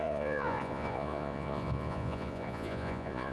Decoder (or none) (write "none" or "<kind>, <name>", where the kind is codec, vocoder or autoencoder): vocoder, Vocos